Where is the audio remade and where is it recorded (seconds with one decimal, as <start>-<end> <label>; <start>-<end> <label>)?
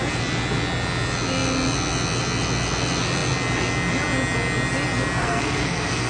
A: 0.0-5.2 recorded; 5.2-6.1 remade